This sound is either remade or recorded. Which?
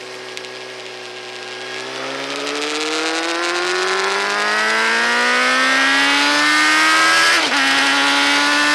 recorded